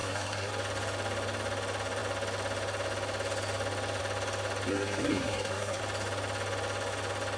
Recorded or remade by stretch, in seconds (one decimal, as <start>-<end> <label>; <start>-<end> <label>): 0.0-0.5 remade; 0.5-4.7 recorded; 4.7-5.8 remade; 5.8-7.4 recorded